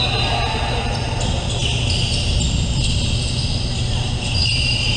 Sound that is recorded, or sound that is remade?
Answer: recorded